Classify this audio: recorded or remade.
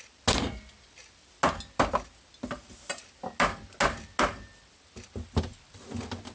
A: recorded